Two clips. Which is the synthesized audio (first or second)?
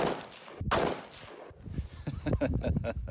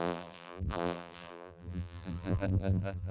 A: second